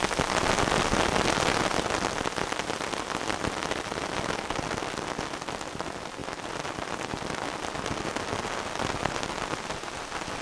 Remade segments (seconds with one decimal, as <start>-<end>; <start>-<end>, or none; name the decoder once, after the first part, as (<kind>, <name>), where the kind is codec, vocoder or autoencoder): none